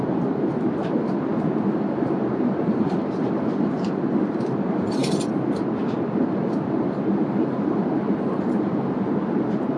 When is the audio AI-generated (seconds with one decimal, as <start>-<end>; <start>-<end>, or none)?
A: 0.0-9.8